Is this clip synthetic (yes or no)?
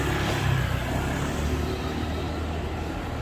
no